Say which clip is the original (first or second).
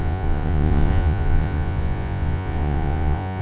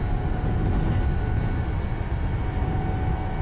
second